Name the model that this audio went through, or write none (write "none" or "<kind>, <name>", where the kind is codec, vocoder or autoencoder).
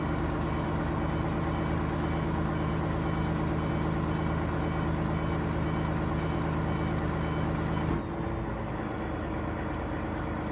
none